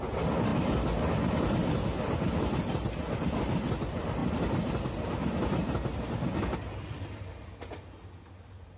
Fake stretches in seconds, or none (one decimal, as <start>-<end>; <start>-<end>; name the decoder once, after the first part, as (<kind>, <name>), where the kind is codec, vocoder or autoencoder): none